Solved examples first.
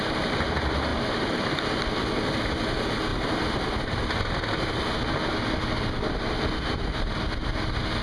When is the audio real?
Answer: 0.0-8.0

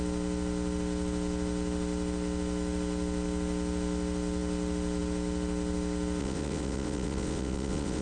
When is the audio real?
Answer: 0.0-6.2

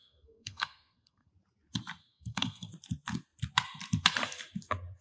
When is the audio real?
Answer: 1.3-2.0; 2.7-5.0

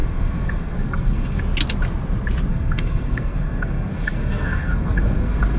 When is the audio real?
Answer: 1.4-2.5

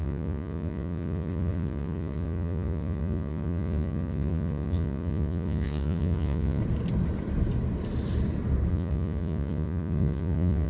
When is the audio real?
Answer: 6.6-8.7